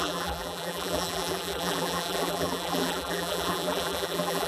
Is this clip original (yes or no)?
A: no